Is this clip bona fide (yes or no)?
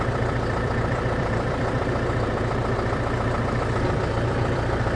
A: no